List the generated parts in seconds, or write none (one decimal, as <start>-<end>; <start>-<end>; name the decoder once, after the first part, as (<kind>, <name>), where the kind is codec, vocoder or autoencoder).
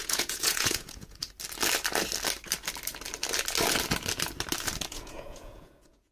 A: 0.0-1.2 (vocoder, Vocos); 4.9-6.1